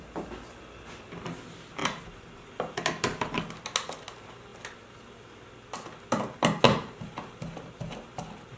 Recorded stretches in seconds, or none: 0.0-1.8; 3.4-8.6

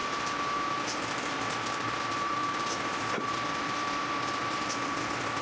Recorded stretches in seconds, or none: none

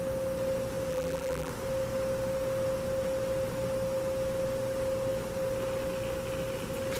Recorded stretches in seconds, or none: 0.0-0.9; 1.5-7.0

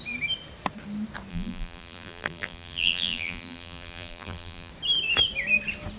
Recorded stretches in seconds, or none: 0.0-1.3; 4.7-6.0